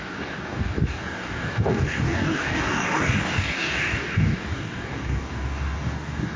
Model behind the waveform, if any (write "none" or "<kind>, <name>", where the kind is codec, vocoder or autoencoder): codec, DAC